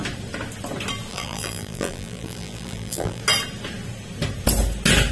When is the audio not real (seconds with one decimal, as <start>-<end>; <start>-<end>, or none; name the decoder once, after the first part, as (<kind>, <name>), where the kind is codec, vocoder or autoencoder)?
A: 1.1-3.2 (vocoder, BigVGAN v2)